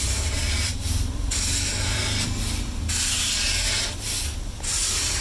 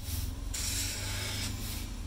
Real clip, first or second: second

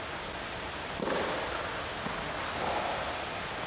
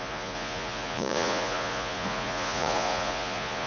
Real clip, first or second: first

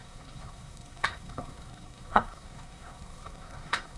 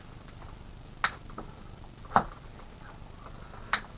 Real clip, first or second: second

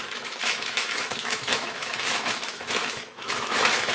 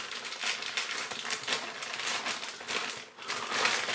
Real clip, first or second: second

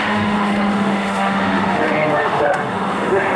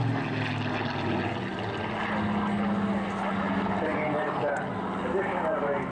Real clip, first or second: second